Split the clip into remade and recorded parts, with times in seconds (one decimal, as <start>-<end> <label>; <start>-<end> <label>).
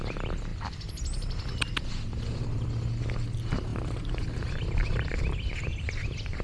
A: 0.0-3.7 recorded; 3.7-4.6 remade; 4.6-6.4 recorded